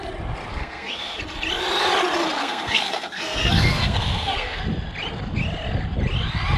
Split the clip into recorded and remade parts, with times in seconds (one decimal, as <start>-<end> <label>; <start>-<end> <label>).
0.0-0.5 recorded; 0.5-1.2 remade; 1.2-2.4 recorded; 2.4-4.6 remade; 4.6-6.6 recorded